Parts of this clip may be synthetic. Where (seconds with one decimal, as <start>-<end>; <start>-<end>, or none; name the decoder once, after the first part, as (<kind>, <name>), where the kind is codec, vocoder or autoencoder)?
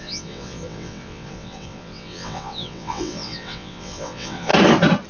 0.0-4.5 (vocoder, WaveNeXt)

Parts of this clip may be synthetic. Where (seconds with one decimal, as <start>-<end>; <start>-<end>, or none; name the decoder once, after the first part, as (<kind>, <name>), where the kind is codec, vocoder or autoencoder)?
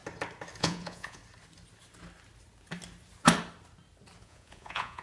0.6-1.2 (vocoder, Vocos); 4.2-5.0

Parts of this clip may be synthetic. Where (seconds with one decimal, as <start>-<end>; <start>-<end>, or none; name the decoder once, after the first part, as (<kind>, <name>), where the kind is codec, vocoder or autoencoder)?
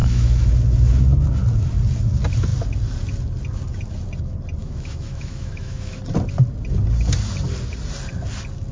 0.0-0.5 (autoencoder, DAC-VAE); 4.6-6.0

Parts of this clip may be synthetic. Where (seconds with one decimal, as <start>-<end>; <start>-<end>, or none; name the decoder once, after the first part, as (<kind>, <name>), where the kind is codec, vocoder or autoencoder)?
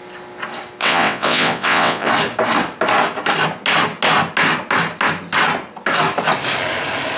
0.8-2.1 (vocoder, WaveNeXt)